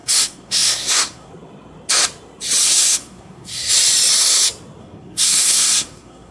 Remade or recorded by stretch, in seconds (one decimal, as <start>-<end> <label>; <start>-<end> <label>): 0.0-1.3 remade; 1.3-2.6 recorded; 2.6-3.7 remade; 3.7-4.8 recorded; 4.8-6.3 remade